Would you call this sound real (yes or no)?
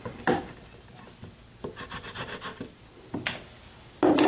yes